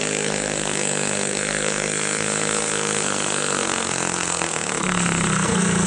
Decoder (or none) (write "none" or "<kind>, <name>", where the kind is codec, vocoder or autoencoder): codec, SNAC